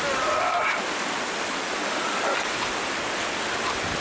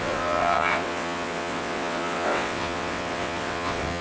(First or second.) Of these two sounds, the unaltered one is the first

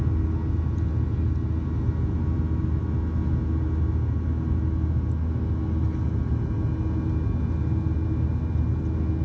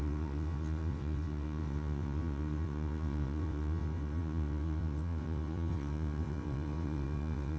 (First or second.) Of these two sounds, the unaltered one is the first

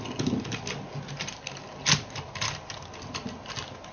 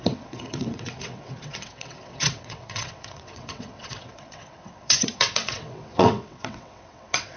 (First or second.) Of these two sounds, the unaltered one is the first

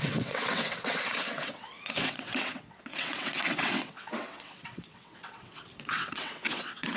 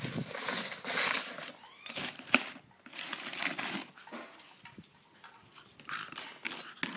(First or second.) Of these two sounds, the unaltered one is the second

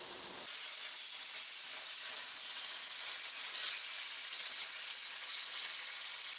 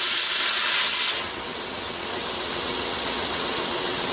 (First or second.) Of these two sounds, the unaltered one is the first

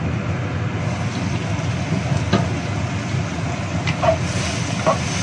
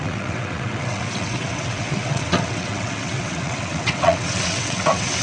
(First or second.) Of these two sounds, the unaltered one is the first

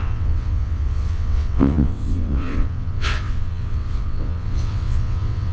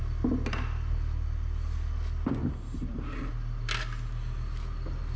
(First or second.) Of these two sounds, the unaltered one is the second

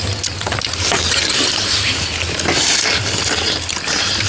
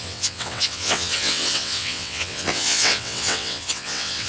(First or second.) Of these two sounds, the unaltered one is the first